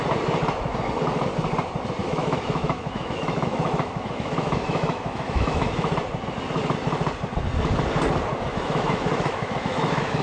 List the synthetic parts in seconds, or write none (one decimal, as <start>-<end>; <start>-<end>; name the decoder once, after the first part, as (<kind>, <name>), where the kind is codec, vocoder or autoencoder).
2.0-5.9 (autoencoder, DAC-VAE); 8.5-10.2